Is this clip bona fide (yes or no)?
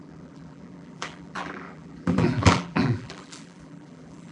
no